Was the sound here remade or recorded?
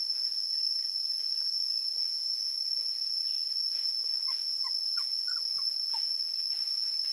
recorded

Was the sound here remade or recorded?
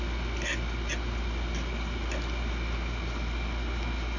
recorded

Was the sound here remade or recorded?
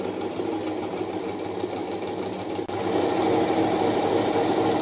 recorded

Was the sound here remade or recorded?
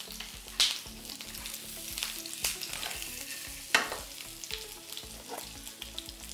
recorded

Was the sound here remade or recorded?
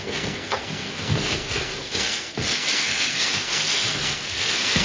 remade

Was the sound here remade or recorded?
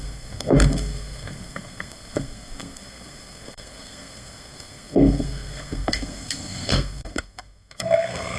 remade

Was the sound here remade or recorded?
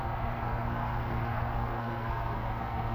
remade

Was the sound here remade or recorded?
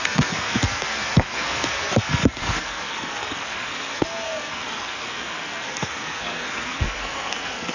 remade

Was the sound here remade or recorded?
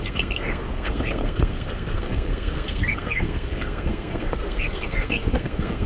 remade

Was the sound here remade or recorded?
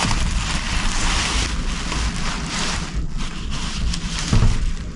recorded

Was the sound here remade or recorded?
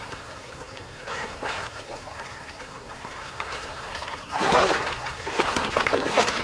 remade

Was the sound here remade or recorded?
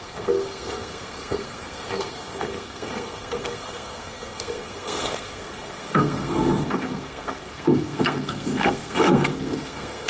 remade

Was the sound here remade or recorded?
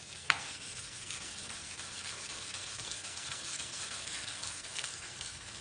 remade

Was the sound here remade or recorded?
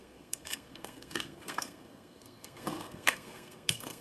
remade